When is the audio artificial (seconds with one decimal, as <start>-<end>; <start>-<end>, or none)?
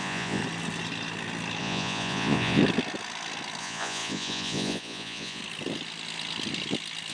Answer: 0.0-0.4; 1.6-2.6; 3.6-5.4